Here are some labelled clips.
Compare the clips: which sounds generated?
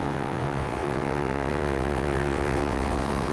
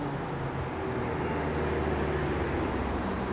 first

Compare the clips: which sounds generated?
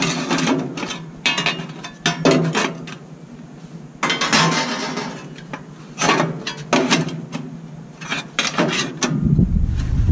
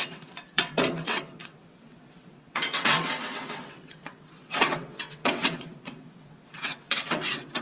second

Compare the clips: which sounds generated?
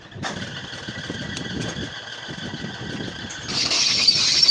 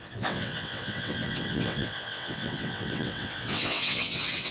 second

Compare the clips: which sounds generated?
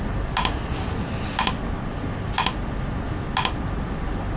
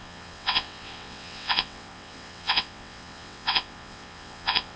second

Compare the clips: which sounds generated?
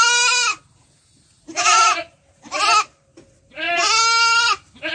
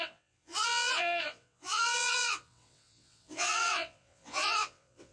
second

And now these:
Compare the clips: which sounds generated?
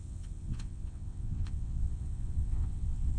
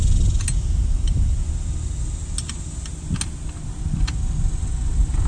first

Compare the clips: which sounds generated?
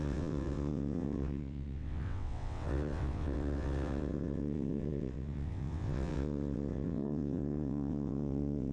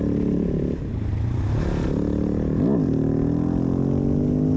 first